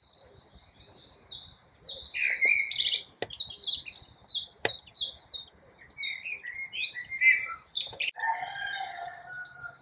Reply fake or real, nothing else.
real